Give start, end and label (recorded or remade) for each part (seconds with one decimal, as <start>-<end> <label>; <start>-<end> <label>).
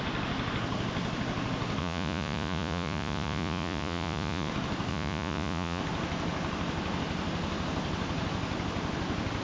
0.0-1.8 recorded; 1.8-4.5 remade; 4.5-4.9 recorded; 4.9-5.8 remade; 5.8-9.4 recorded